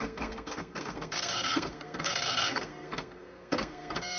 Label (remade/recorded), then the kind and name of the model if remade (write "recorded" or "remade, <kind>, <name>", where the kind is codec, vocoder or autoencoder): remade, codec, SNAC